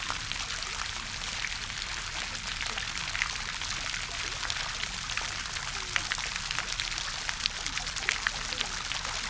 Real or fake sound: real